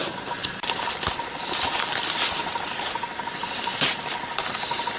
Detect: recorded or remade recorded